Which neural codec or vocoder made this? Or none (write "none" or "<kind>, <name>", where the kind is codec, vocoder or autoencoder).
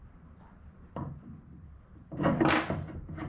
none